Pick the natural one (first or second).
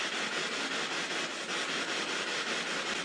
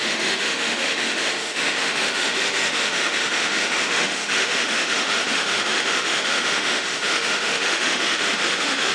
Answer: first